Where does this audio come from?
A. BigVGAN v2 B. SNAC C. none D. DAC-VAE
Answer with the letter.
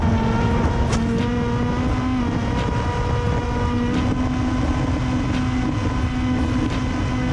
C